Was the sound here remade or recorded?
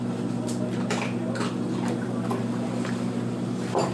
recorded